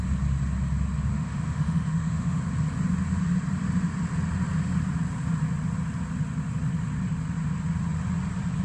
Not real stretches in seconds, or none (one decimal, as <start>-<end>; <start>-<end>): 1.1-2.4